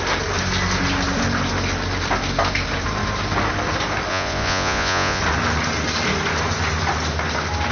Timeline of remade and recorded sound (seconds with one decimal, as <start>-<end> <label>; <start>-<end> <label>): 0.0-4.1 recorded; 4.1-5.2 remade; 5.2-7.7 recorded